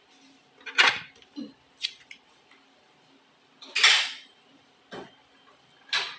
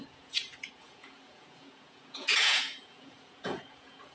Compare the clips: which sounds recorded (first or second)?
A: first